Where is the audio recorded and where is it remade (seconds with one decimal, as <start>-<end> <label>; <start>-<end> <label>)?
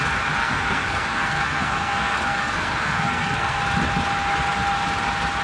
0.0-0.4 recorded; 0.4-3.6 remade; 3.6-5.4 recorded